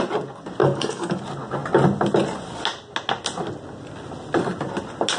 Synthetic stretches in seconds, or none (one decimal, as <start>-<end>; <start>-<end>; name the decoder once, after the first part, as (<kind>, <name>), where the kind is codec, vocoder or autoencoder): 0.6-1.2 (codec, DAC)